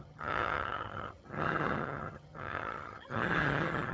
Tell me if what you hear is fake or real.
fake